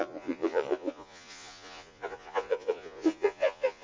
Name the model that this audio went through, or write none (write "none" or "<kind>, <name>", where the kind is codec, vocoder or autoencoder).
vocoder, Vocos